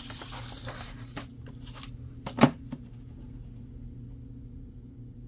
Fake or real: real